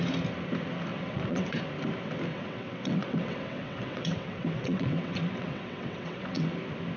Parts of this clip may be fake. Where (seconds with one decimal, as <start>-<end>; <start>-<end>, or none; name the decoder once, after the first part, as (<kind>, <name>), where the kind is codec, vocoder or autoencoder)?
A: 0.9-1.6 (vocoder, WaveNeXt); 2.3-6.5